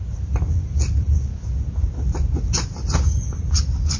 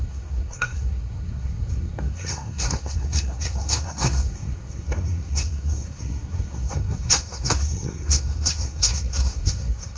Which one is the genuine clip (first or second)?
first